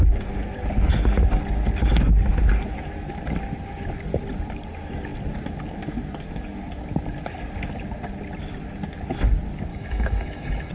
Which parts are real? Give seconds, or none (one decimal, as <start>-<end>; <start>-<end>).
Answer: 0.0-9.7